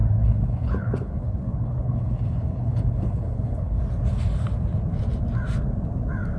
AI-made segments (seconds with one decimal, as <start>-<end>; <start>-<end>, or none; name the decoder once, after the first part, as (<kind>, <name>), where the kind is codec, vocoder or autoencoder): 0.0-3.8 (codec, HILCodec)